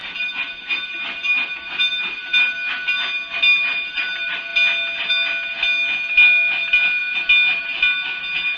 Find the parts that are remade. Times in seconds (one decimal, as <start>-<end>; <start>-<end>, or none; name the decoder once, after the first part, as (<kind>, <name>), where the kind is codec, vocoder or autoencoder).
none